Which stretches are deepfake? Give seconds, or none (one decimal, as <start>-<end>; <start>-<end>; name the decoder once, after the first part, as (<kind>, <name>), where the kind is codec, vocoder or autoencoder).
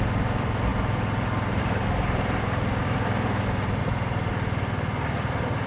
none